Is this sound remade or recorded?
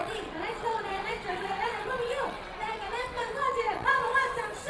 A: remade